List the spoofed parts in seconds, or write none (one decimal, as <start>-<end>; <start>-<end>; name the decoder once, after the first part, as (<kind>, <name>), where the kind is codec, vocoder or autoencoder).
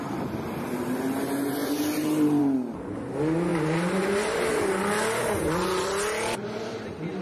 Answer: none